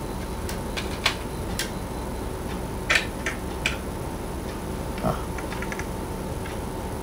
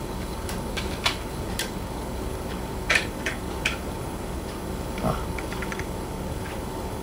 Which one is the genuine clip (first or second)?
first